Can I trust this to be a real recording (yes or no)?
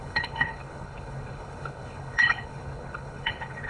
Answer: no